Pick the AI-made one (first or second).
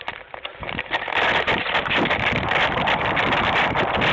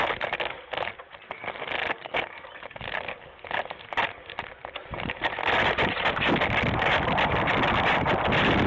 first